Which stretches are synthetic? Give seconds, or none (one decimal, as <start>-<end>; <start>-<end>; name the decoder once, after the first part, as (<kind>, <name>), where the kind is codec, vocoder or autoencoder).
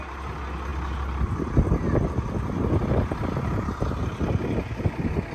none